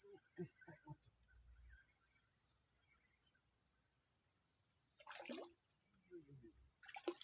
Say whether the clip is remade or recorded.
recorded